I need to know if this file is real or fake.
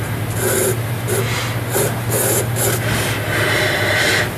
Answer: real